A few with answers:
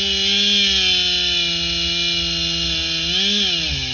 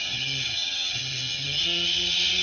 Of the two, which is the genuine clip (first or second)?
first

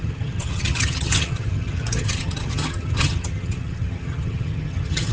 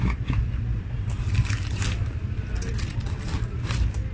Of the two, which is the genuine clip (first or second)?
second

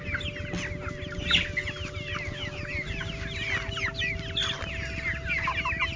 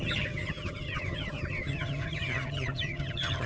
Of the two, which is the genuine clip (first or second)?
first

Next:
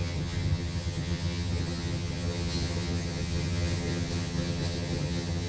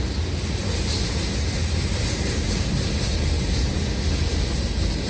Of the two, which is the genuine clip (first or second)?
second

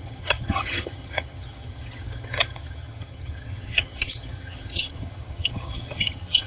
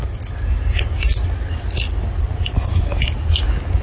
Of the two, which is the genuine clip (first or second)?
second